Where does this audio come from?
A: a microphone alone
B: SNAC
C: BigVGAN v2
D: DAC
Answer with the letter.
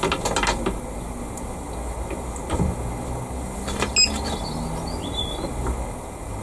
A